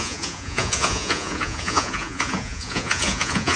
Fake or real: fake